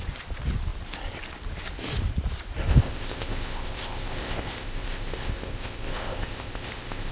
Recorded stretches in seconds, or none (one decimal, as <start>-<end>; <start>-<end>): 0.0-2.7